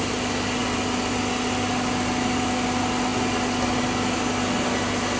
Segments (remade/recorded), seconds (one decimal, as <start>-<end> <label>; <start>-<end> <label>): 0.0-5.2 recorded